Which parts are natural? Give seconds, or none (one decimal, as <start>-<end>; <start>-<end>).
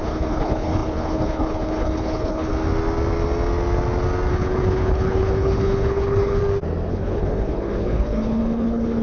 2.5-4.3; 6.4-6.9